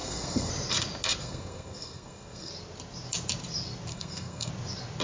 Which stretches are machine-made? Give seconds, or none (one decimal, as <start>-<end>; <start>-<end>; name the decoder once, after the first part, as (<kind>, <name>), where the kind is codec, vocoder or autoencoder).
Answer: 0.0-0.5 (codec, SNAC); 1.2-2.5; 3.9-4.5